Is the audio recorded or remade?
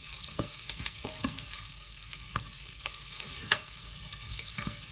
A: remade